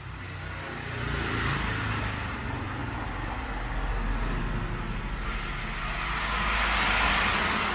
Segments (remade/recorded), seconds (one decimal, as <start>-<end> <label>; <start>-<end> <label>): 0.0-7.7 recorded